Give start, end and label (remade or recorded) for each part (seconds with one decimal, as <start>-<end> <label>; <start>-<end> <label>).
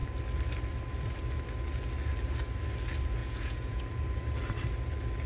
0.0-3.2 recorded; 3.2-3.8 remade; 3.8-5.3 recorded